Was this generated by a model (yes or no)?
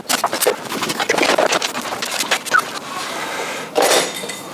no